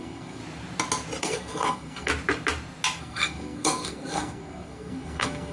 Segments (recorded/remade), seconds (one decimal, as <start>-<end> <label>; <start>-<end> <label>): 0.0-0.4 remade; 0.4-1.2 recorded; 1.2-2.1 remade; 2.1-3.0 recorded; 3.0-5.5 remade